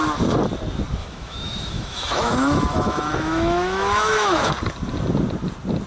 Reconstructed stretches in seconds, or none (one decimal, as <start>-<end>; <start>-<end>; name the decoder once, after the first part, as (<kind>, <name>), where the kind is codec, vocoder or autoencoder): 1.0-4.5 (autoencoder, DAC-VAE)